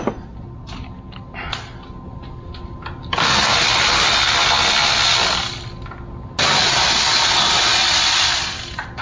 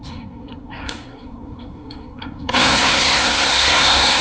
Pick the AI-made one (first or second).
second